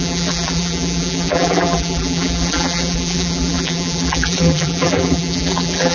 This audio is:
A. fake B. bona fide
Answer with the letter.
A